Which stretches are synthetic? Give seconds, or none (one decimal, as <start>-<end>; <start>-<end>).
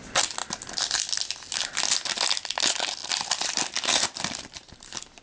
none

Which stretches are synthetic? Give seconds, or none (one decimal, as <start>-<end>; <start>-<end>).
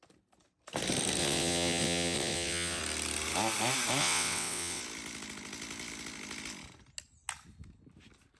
1.2-2.8; 4.0-4.8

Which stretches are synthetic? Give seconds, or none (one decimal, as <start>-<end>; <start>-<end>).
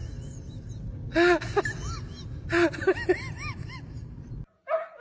none